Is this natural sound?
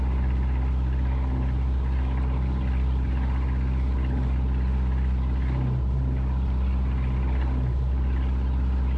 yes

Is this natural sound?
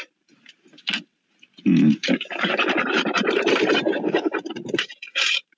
no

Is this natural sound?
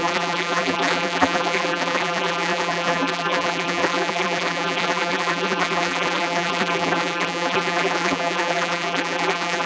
no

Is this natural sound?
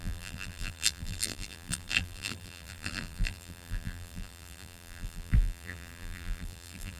no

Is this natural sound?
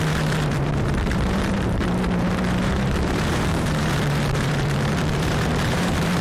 no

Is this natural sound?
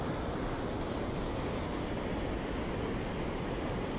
yes